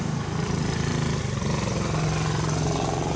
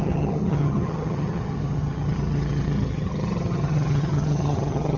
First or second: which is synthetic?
second